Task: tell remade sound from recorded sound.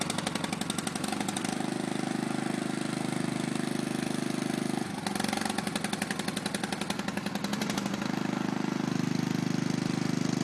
recorded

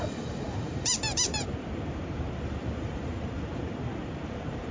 remade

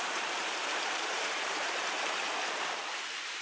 remade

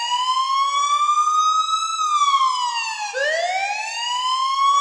recorded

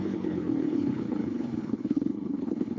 remade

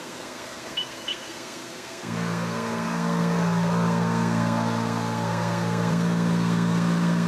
remade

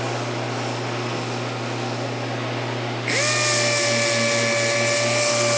recorded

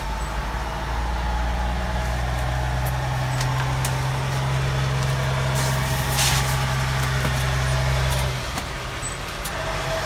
recorded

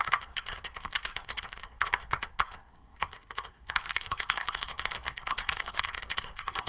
remade